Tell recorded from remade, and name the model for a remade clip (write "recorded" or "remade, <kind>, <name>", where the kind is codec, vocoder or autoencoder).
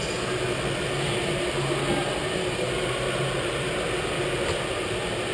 recorded